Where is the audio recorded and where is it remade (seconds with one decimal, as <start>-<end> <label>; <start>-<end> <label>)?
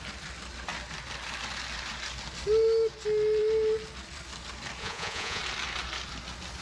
0.0-4.8 recorded; 4.8-5.4 remade; 5.4-6.6 recorded